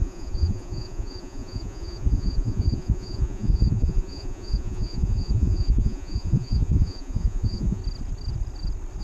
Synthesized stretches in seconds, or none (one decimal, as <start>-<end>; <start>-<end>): 0.0-7.8